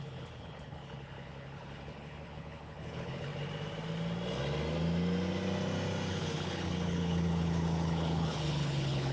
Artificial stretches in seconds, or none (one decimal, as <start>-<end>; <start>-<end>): 0.0-3.3; 6.1-9.1